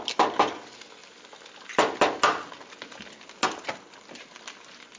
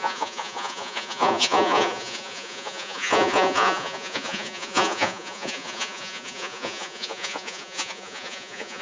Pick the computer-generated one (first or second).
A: second